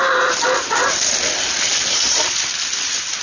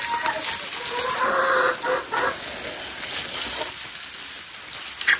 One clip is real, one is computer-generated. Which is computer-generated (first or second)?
first